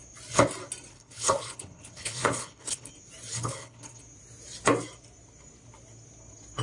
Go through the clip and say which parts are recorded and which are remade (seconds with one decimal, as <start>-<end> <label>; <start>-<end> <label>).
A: 0.0-0.9 recorded; 0.9-2.9 remade; 2.9-3.3 recorded; 3.3-4.0 remade; 4.0-6.6 recorded